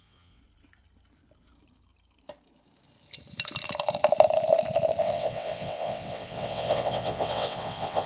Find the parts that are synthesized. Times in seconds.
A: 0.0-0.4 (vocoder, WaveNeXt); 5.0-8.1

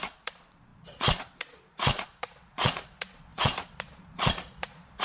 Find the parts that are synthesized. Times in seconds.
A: 0.0-5.0 (vocoder, Vocos)

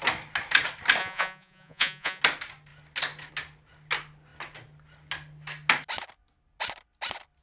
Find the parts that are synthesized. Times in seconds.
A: 1.0-2.2 (vocoder, Vocos)

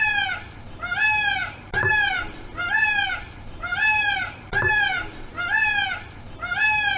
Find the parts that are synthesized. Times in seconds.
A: 1.4-4.5 (vocoder, BigVGAN v2)